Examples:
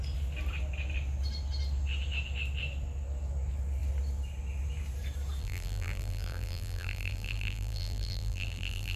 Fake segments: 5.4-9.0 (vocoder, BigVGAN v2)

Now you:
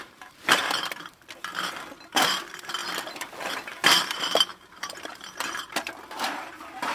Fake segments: 0.0-0.6 (vocoder, BigVGAN v2); 2.1-2.8; 3.5-6.9

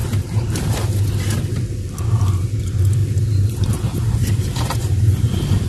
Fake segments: none

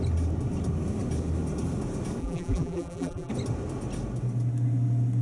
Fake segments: 2.2-3.3 (vocoder, BigVGAN v2)

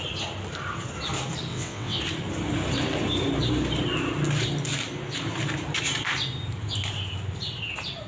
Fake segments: 1.5-2.0 (vocoder, WaveNeXt)

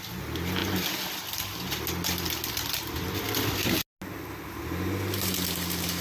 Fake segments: none

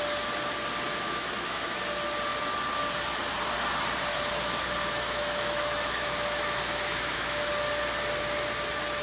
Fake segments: 0.9-1.8 (autoencoder, DAC-VAE); 4.1-7.4

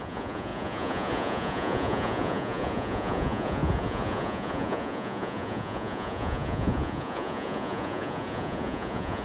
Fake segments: 0.0-9.2 (vocoder, Vocos)